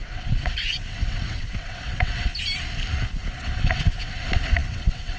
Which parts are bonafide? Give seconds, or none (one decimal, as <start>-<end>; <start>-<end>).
2.3-3.4